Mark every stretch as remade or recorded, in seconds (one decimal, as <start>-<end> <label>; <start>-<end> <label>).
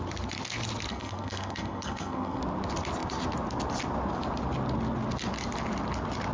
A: 0.0-0.9 recorded; 0.9-2.4 remade; 2.4-6.3 recorded